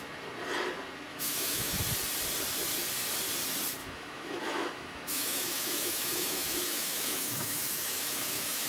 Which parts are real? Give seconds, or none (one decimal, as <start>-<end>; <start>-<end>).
0.0-1.1; 1.8-3.8